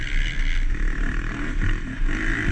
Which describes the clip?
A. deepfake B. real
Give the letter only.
B